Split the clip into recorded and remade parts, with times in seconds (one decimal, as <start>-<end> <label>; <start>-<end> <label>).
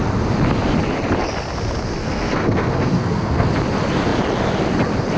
0.0-2.0 recorded; 2.0-3.5 remade; 3.5-5.2 recorded